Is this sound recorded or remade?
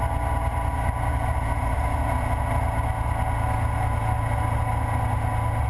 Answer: recorded